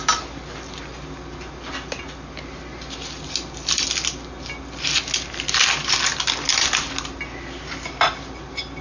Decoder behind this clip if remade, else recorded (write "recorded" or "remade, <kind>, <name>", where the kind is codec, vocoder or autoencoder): recorded